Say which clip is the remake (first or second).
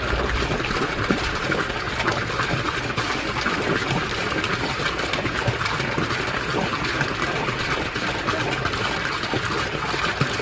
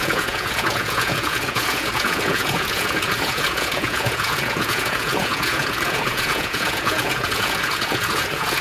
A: second